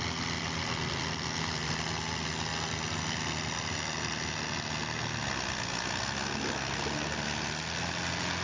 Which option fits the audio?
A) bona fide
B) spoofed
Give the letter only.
A